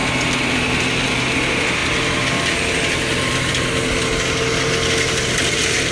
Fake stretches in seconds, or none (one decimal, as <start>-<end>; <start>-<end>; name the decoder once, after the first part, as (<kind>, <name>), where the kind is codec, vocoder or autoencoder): none